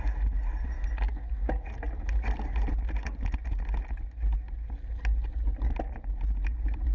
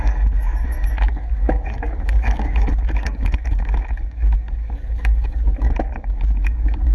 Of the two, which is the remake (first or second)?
second